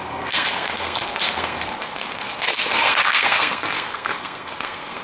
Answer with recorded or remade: remade